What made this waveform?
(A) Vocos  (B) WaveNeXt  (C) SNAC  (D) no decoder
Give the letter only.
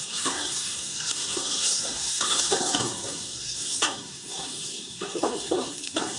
C